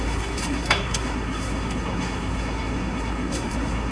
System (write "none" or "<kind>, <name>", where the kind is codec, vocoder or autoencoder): codec, SNAC